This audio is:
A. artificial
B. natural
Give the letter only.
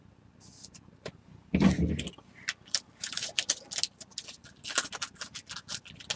B